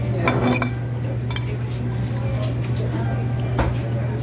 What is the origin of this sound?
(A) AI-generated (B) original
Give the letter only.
B